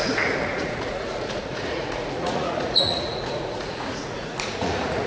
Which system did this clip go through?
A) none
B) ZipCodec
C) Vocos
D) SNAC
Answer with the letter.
C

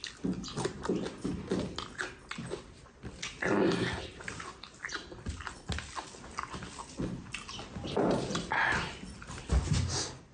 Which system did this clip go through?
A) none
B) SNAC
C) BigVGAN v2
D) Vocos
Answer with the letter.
A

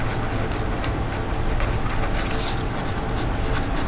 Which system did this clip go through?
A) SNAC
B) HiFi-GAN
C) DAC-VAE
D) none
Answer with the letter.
D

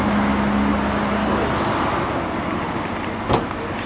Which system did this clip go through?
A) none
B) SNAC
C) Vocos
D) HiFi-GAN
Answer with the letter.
A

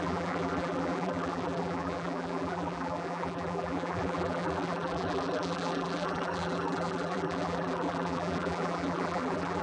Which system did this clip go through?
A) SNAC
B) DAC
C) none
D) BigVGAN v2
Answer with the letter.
D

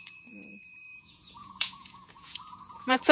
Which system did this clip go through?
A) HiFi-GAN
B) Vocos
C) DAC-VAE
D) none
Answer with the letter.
B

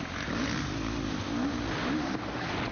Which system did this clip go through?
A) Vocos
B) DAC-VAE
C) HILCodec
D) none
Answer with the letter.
D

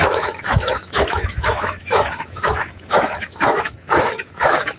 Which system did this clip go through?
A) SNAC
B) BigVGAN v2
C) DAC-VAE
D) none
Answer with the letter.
C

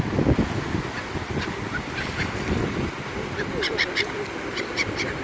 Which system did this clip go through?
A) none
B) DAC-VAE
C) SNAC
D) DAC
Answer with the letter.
A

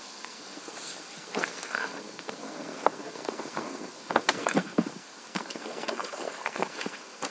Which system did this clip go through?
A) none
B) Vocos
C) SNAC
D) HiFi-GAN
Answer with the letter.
C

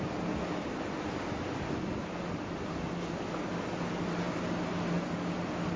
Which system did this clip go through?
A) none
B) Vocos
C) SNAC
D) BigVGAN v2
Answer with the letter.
A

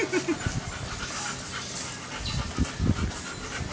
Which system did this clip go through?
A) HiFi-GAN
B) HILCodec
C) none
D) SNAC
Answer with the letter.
C